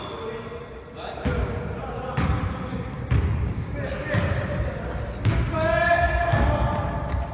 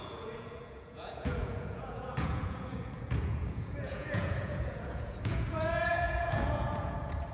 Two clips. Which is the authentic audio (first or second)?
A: first